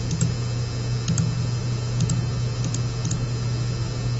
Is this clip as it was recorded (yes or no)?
yes